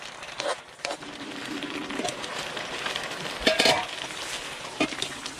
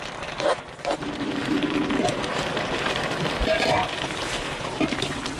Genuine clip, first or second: first